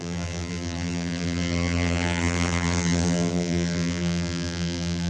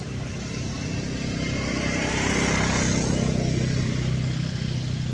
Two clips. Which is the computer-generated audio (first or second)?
first